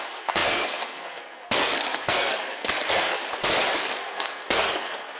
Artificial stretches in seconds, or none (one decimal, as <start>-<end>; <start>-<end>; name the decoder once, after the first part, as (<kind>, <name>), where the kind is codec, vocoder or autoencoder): 0.0-3.2 (codec, SNAC); 3.8-5.2